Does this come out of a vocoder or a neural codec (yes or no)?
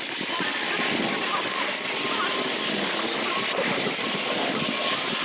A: no